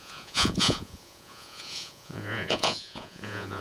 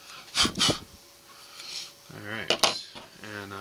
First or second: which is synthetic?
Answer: first